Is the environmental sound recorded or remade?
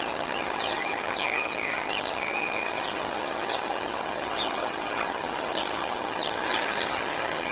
remade